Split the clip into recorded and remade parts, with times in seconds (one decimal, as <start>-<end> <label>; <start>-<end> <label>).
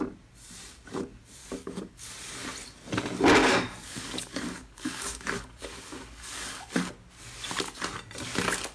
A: 0.0-1.4 recorded; 1.4-2.1 remade; 2.1-3.4 recorded; 3.4-6.9 remade; 6.9-8.7 recorded